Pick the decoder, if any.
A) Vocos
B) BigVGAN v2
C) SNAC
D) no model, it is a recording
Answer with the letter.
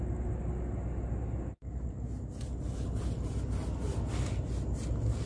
D